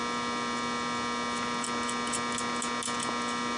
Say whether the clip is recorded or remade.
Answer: recorded